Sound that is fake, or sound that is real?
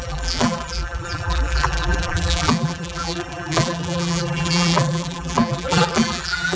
fake